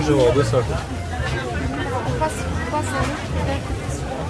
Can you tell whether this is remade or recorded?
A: recorded